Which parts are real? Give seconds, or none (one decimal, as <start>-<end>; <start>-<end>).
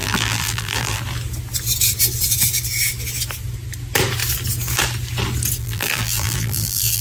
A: 1.0-5.6